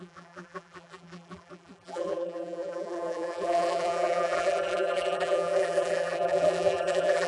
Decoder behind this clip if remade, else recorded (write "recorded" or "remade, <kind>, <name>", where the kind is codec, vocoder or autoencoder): remade, vocoder, BigVGAN v2